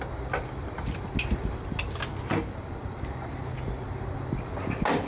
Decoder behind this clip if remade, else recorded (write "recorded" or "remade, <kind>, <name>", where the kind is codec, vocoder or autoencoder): recorded